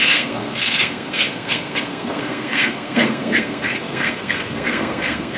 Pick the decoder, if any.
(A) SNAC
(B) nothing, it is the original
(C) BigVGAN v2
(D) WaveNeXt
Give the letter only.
A